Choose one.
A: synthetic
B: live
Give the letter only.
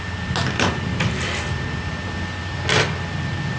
B